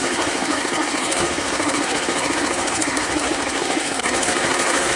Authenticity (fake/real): fake